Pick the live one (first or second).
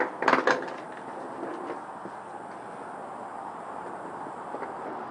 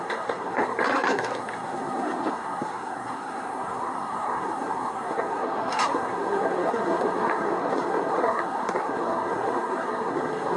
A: first